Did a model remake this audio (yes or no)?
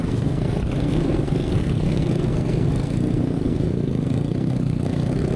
yes